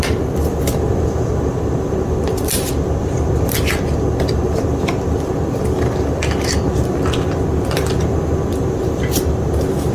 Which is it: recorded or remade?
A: remade